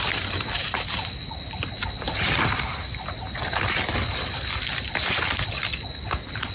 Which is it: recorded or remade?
recorded